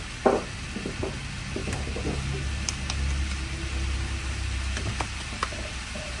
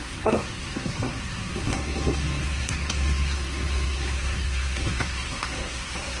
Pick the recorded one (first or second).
first